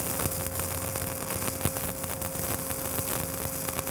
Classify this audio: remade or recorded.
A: recorded